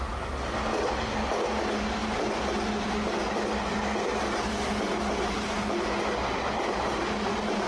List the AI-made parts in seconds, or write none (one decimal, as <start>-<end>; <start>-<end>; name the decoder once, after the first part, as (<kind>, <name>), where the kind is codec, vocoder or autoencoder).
none